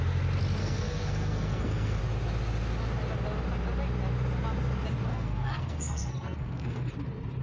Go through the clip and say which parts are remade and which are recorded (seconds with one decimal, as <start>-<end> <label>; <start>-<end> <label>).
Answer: 0.0-0.6 recorded; 0.6-2.0 remade; 2.0-5.1 recorded; 5.1-6.9 remade; 6.9-7.4 recorded